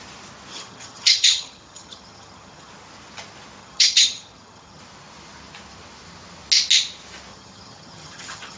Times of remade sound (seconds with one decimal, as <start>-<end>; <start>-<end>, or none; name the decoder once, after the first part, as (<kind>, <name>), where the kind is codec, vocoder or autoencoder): 0.5-2.7 (vocoder, HiFi-GAN); 3.6-4.8; 7.3-8.6

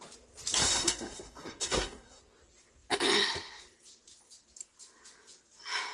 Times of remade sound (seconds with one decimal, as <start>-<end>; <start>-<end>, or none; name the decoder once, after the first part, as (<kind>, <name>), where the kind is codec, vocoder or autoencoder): 0.6-2.2 (codec, SNAC)

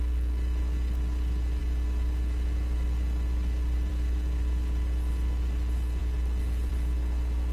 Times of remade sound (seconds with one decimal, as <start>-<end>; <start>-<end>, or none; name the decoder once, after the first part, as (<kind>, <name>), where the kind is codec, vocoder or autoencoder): none

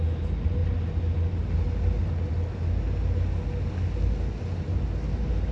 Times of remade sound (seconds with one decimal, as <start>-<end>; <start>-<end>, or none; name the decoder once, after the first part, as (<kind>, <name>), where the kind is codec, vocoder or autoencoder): none